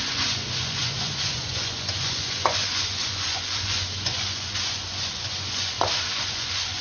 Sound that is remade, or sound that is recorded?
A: remade